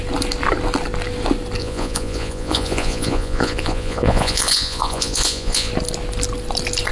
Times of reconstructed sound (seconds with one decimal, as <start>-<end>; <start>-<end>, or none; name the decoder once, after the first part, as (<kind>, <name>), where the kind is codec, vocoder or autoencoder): 1.6-5.7 (vocoder, Vocos)